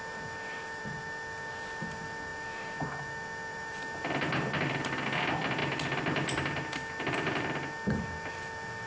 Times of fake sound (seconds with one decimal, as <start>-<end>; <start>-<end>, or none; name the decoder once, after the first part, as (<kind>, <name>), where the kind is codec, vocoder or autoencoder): 0.0-8.9 (vocoder, BigVGAN v2)